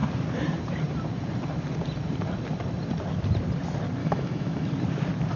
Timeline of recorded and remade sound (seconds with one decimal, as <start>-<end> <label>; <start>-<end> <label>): 0.0-4.0 recorded; 4.0-4.7 remade; 4.7-5.4 recorded